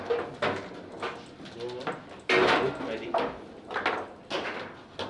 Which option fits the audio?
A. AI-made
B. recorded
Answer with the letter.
B